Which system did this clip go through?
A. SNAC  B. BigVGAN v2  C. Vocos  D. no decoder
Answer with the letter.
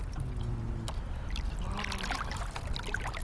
D